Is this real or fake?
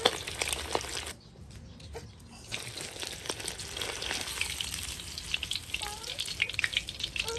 real